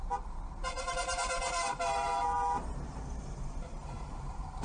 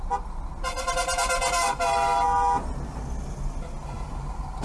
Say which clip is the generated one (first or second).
first